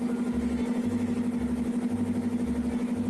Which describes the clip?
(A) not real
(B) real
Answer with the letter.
B